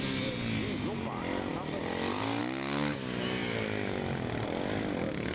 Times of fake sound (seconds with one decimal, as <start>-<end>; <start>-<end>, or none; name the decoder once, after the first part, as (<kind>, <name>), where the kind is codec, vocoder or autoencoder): none